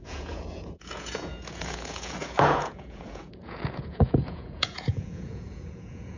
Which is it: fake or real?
fake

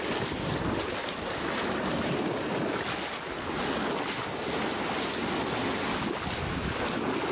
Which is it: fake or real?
real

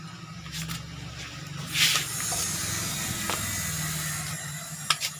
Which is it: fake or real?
real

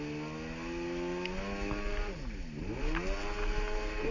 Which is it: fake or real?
real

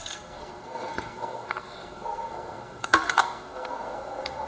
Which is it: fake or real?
fake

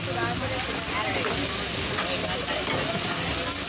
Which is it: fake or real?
real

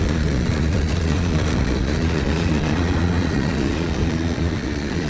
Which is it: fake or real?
fake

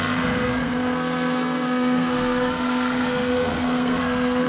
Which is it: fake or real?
fake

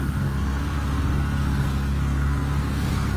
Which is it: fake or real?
fake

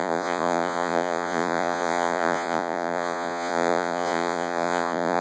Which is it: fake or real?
fake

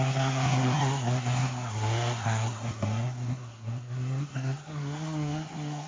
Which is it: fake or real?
fake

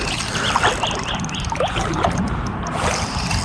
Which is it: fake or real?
fake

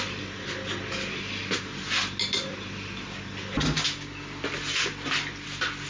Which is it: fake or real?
real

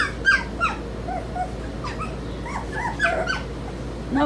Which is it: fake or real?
real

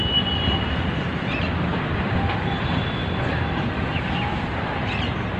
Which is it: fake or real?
real